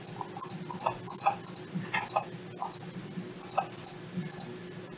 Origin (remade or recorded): recorded